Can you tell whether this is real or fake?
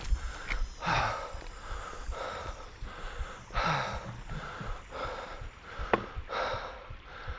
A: real